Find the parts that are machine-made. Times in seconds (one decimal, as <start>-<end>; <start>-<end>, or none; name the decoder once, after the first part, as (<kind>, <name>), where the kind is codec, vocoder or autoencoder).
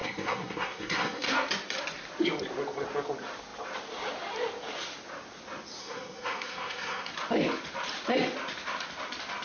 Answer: 0.0-1.3 (codec, SNAC); 5.8-7.1